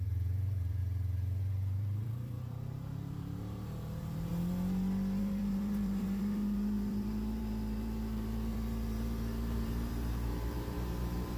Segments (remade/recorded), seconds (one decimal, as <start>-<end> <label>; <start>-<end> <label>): 0.0-0.8 remade; 0.8-1.4 recorded; 1.4-4.3 remade; 4.3-5.2 recorded; 5.2-11.4 remade